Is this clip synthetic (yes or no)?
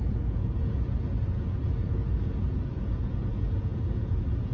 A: yes